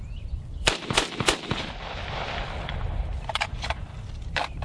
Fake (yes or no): yes